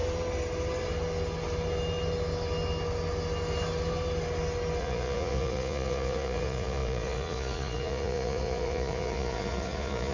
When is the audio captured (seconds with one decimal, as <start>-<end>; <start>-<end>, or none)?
0.0-4.8